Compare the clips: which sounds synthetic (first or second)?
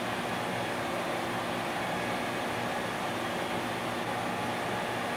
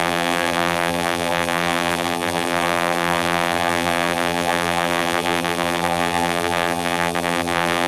second